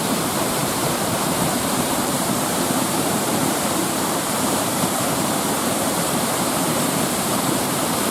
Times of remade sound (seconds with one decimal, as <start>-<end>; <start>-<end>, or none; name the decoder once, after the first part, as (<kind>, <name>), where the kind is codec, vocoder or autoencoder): 0.0-8.1 (vocoder, BigVGAN v2)